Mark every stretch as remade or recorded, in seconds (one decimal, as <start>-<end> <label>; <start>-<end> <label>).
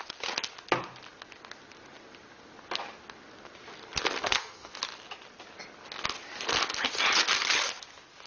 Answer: 0.0-4.2 recorded; 4.2-4.7 remade; 4.7-8.3 recorded